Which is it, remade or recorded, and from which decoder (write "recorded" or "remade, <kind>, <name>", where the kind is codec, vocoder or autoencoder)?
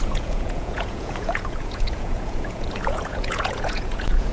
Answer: remade, vocoder, Vocos